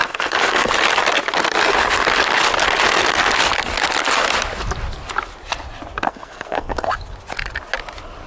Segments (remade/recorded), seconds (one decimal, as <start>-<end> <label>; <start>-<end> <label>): 0.0-0.7 remade; 0.7-6.1 recorded; 6.1-6.9 remade; 6.9-8.3 recorded